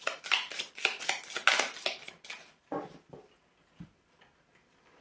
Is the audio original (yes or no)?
yes